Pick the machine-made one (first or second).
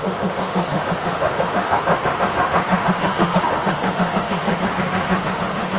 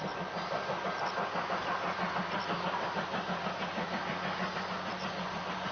first